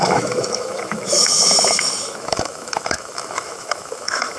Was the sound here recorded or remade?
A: remade